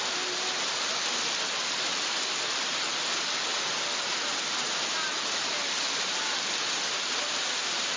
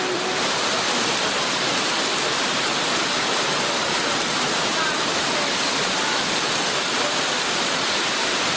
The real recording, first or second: first